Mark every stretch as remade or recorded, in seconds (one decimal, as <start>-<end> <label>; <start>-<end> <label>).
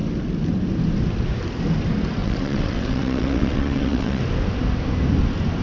0.0-2.2 recorded; 2.2-4.2 remade; 4.2-5.6 recorded